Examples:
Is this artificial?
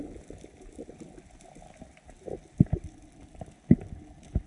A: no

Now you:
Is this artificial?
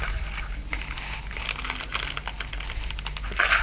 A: no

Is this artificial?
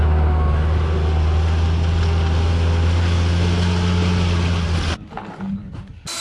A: no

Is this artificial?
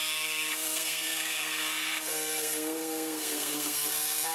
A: yes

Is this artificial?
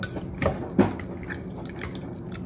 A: no